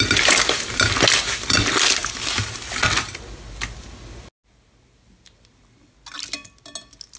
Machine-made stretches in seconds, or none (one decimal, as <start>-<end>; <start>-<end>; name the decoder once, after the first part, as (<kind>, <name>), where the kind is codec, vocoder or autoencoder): none